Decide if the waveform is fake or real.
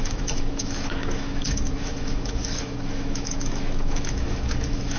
fake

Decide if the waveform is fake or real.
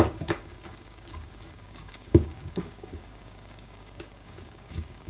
fake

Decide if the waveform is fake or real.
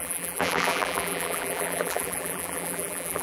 fake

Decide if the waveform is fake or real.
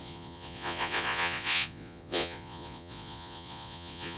fake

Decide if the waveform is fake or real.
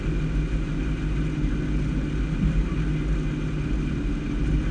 real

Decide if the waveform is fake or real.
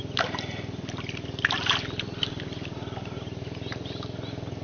real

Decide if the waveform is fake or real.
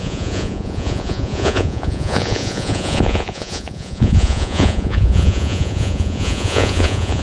fake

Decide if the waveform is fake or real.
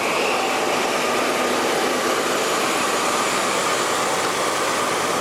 real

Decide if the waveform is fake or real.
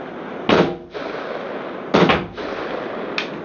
real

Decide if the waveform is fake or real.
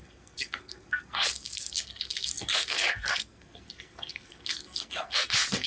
fake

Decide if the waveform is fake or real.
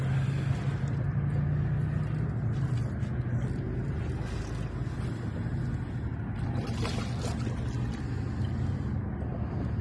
real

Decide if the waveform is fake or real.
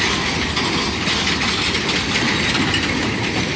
real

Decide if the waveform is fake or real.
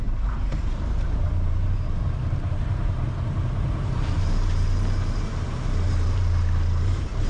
fake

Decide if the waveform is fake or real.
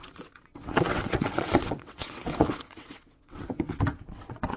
fake